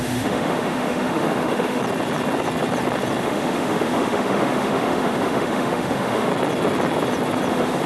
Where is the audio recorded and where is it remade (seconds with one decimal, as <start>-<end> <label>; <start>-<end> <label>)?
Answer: 0.0-1.8 remade; 1.8-3.2 recorded; 3.2-6.3 remade; 6.3-7.5 recorded; 7.5-7.9 remade